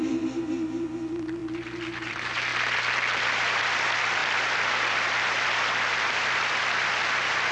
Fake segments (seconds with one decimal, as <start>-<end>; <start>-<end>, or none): 0.0-1.4; 2.1-2.5; 3.6-7.5